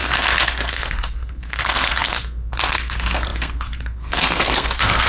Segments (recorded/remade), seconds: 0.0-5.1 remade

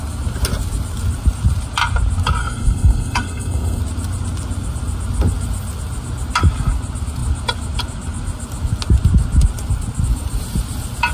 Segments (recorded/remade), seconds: 0.0-2.4 recorded; 2.4-3.8 remade; 3.8-11.1 recorded

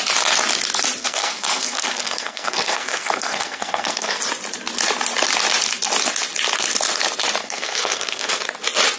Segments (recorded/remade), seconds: 0.0-1.0 recorded; 1.0-4.2 remade; 4.2-7.4 recorded; 7.4-8.4 remade; 8.4-9.0 recorded